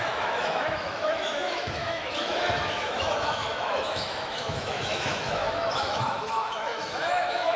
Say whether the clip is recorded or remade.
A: remade